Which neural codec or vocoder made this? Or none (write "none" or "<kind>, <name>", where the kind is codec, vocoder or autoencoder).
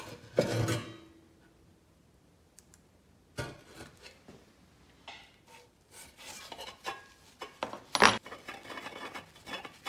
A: none